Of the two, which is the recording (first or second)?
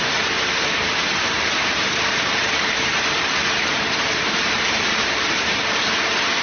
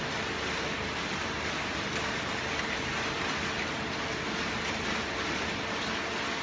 second